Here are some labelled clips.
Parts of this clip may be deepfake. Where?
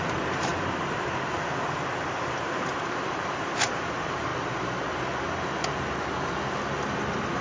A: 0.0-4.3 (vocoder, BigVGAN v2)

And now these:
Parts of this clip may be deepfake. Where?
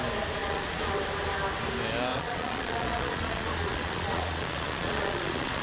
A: 0.4-0.9 (vocoder, Vocos); 2.1-5.6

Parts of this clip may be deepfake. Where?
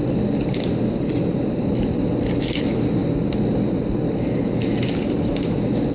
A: none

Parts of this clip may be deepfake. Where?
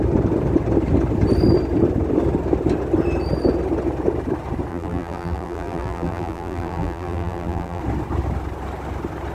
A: 4.7-7.8 (vocoder, BigVGAN v2)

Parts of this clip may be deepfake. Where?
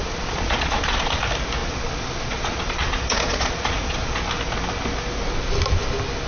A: 0.0-1.2 (vocoder, Vocos); 1.6-4.2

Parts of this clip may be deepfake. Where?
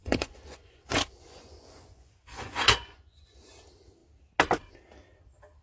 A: 0.0-3.4 (vocoder, Vocos)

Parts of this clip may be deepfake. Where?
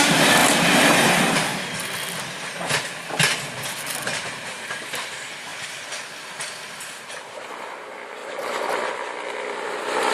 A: 0.0-0.4 (vocoder, BigVGAN v2); 4.6-10.1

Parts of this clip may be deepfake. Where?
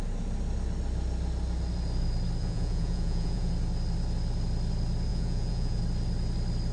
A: 2.4-3.5 (vocoder, Vocos); 5.1-5.8